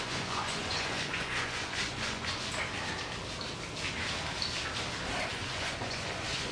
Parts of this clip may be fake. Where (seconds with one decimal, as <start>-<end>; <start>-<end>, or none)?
0.0-2.5; 5.3-6.5